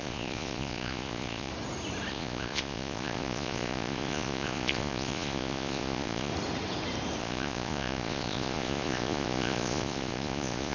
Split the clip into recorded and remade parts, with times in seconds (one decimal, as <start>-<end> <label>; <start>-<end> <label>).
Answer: 0.0-1.5 remade; 1.5-2.1 recorded; 2.1-6.3 remade; 6.3-7.2 recorded; 7.2-10.7 remade